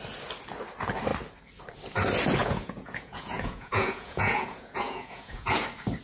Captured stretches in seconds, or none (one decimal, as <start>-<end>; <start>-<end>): 0.0-2.4; 5.6-6.0